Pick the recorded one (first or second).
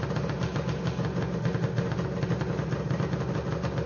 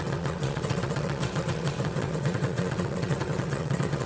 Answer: first